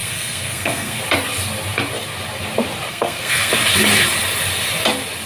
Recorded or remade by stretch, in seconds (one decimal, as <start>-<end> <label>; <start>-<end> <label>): 0.0-1.0 remade; 1.0-2.9 recorded; 2.9-3.5 remade; 3.5-5.3 recorded